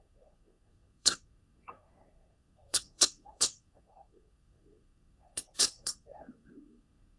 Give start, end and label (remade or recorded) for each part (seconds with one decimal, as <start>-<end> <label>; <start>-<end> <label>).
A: 0.0-7.2 remade